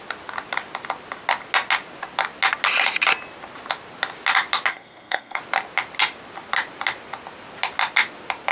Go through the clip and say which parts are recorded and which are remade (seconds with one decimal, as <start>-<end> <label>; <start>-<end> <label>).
0.0-4.7 recorded; 4.7-5.4 remade; 5.4-8.5 recorded